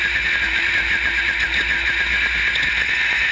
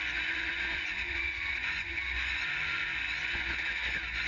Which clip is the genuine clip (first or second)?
first